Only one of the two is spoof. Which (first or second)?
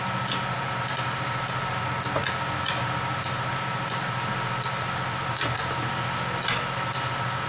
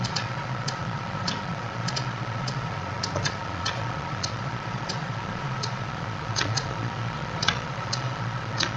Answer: second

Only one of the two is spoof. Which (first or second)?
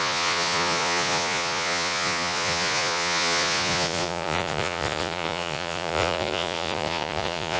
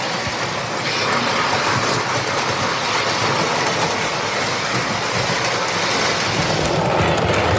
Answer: first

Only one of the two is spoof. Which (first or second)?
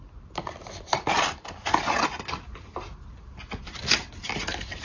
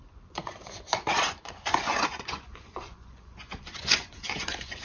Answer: second